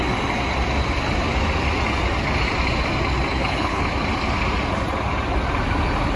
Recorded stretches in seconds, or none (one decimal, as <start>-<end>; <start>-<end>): 0.0-3.3; 3.9-6.2